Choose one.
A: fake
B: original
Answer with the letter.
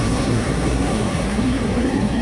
A